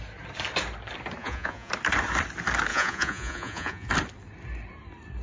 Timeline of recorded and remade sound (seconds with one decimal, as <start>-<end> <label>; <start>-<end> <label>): 0.0-1.2 recorded; 1.2-1.7 remade; 1.7-2.7 recorded; 2.7-3.9 remade; 3.9-5.2 recorded

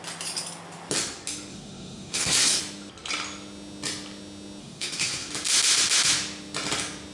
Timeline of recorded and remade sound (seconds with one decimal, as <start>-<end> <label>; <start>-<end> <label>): 0.0-1.5 recorded; 1.5-2.6 remade; 2.6-4.6 recorded; 4.6-5.3 remade; 5.3-7.1 recorded

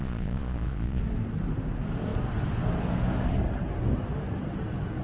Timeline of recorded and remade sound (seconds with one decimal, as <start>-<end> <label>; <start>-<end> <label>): 0.0-1.0 remade; 1.0-5.0 recorded

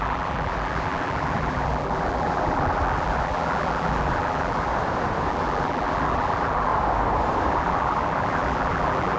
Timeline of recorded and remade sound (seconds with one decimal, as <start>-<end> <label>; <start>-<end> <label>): 0.0-4.7 remade; 4.7-5.3 recorded; 5.3-6.7 remade; 6.7-7.5 recorded; 7.5-9.2 remade

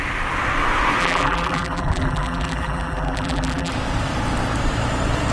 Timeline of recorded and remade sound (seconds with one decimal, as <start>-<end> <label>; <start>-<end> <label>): 0.0-1.0 recorded; 1.0-3.7 remade; 3.7-5.3 recorded